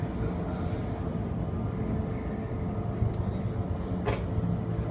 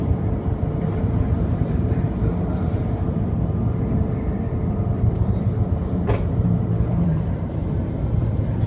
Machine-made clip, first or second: second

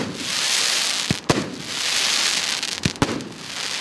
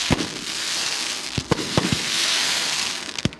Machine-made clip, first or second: second